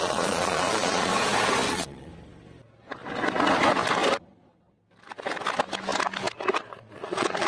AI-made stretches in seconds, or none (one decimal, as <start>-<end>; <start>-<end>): 0.0-1.1; 1.7-2.1; 6.6-7.5